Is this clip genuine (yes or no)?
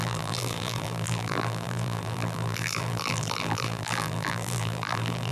no